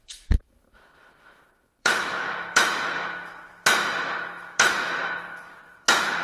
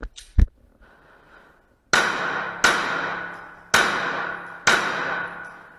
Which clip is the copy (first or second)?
first